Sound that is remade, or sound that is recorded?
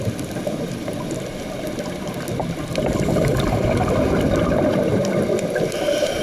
remade